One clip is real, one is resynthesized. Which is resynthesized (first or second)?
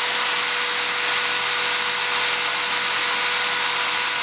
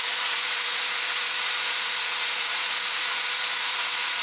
second